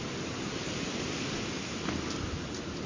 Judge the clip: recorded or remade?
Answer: recorded